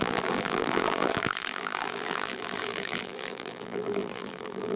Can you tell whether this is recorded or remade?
remade